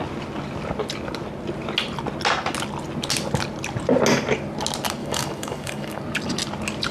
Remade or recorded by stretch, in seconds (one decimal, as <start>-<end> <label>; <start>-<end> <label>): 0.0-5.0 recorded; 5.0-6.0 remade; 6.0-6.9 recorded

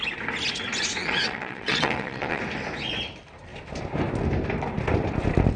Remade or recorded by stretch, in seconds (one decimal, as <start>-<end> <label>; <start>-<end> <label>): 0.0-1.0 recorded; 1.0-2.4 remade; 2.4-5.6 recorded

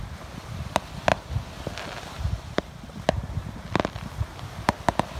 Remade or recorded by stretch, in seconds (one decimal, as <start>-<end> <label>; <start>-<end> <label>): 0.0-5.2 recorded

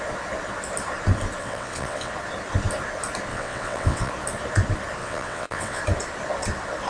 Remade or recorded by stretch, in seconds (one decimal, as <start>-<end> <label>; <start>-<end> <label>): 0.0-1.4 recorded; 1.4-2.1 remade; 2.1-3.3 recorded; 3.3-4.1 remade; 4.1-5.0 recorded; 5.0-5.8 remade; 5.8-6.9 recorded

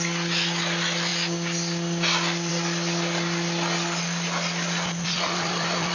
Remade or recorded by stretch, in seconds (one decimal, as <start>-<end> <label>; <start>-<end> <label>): 0.0-5.9 recorded